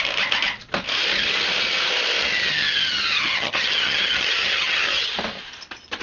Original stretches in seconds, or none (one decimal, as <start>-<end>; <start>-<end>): 0.0-2.2; 5.1-6.0